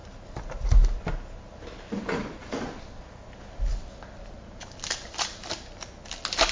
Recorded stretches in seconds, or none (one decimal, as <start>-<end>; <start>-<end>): 0.0-6.5